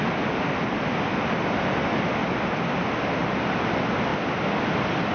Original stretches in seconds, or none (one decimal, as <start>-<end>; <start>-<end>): 0.0-5.1